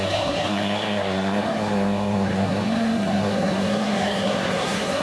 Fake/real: fake